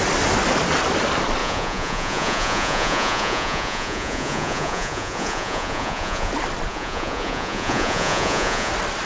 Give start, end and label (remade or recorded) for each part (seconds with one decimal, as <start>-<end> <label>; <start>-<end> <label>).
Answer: 0.0-1.4 recorded; 1.4-6.3 remade; 6.3-6.7 recorded; 6.7-8.7 remade; 8.7-9.1 recorded